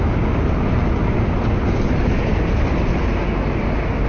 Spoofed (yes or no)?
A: no